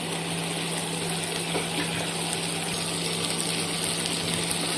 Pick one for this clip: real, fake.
real